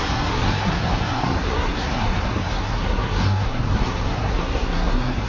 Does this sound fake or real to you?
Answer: fake